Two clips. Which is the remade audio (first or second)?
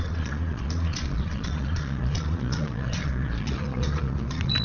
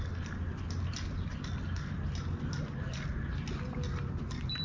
first